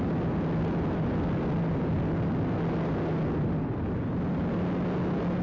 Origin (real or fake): real